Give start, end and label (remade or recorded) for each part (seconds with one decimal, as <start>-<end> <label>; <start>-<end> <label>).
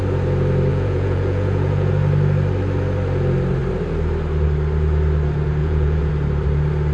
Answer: 0.0-0.7 recorded; 0.7-1.9 remade; 1.9-5.6 recorded; 5.6-6.1 remade; 6.1-6.9 recorded